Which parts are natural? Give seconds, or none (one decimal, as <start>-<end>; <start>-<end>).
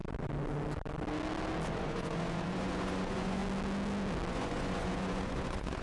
0.0-1.7; 3.4-4.3